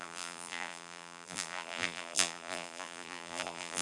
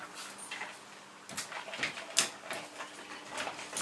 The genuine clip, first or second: second